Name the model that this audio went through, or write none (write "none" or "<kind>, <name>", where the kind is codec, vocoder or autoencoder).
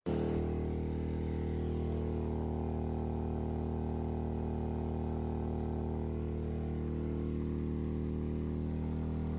none